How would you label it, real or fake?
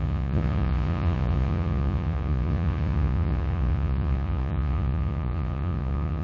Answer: fake